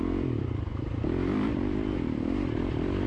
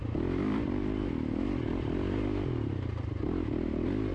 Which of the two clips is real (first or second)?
second